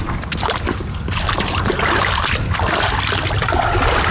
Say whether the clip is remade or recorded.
recorded